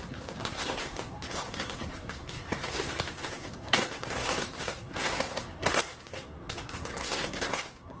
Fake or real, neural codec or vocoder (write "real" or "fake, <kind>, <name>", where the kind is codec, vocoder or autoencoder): fake, codec, SNAC